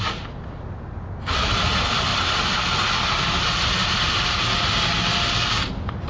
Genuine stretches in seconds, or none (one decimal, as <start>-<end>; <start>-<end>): 0.0-6.1